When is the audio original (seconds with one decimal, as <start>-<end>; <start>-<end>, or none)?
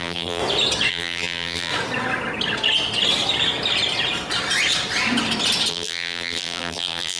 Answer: 0.4-0.9; 1.7-5.7